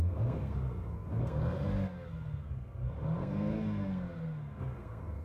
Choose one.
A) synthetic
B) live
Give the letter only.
A